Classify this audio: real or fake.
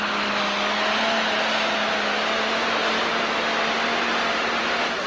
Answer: real